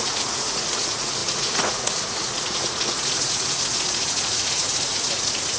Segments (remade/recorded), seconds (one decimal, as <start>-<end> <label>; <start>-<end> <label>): 0.0-5.6 remade